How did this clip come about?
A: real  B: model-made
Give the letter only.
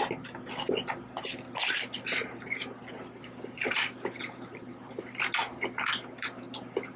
A